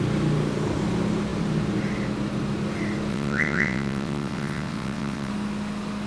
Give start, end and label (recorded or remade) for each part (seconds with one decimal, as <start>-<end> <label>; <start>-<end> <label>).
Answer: 0.0-3.1 recorded; 3.1-5.3 remade; 5.3-6.1 recorded